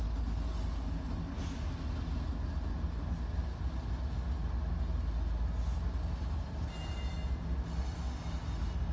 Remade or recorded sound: recorded